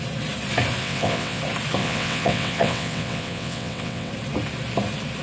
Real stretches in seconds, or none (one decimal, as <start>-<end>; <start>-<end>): 0.0-0.8; 1.4-1.8; 4.1-5.2